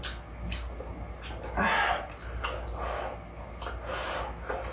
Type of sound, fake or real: real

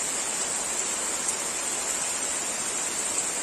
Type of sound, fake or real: real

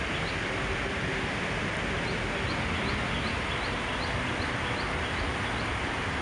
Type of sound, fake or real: real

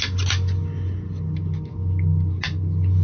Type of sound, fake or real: real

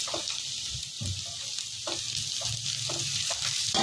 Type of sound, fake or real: real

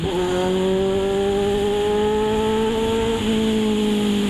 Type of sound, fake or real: real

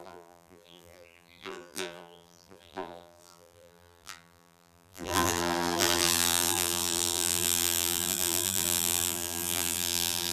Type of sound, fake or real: fake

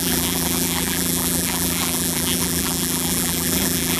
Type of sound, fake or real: fake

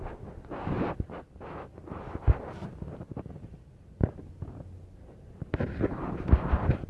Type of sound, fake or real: real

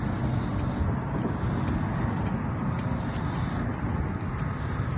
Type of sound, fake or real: real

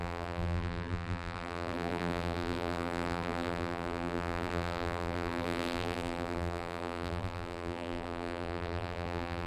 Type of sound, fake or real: fake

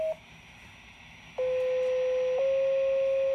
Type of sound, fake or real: real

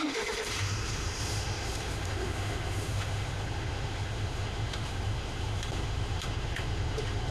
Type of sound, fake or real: fake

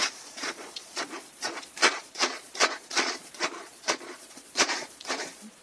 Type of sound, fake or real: fake